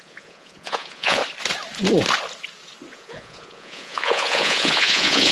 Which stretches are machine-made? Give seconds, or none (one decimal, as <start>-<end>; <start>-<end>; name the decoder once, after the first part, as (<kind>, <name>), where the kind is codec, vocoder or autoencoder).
0.0-1.2 (vocoder, Vocos); 2.9-5.3